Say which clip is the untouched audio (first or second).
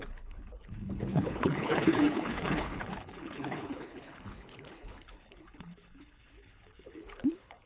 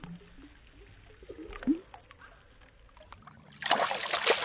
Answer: second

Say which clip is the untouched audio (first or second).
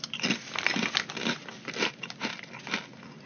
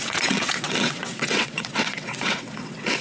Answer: first